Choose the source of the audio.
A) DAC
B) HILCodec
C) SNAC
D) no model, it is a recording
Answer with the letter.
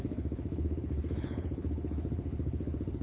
B